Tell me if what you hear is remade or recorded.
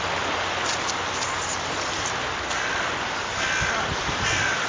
recorded